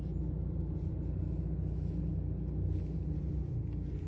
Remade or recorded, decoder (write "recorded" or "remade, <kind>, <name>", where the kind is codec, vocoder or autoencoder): recorded